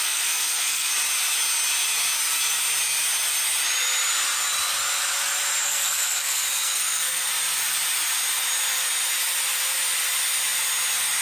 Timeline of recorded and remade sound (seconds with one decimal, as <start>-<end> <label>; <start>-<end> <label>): 0.0-0.9 remade; 0.9-5.6 recorded; 5.6-7.3 remade; 7.3-11.2 recorded